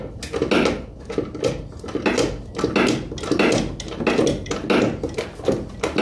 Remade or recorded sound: recorded